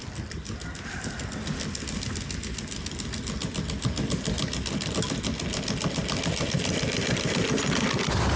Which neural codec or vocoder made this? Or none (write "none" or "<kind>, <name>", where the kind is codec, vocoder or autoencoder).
none